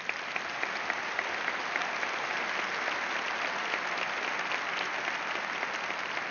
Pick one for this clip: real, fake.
real